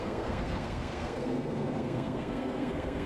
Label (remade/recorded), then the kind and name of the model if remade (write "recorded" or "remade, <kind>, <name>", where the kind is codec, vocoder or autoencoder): remade, codec, SNAC